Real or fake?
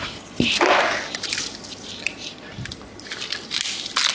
real